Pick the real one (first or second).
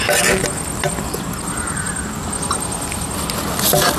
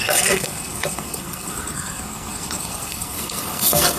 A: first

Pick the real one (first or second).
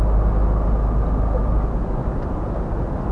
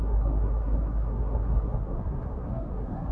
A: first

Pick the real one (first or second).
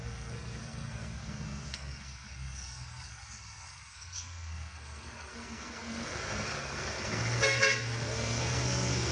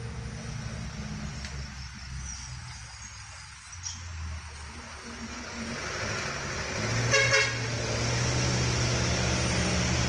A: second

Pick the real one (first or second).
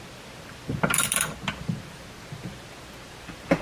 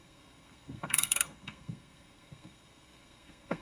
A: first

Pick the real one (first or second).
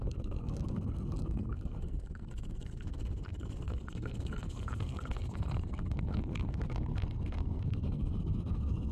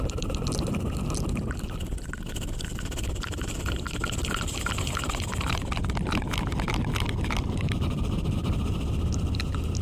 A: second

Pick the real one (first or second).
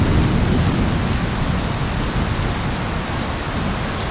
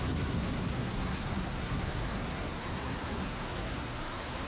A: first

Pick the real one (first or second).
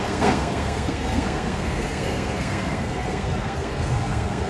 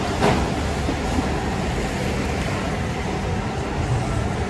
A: second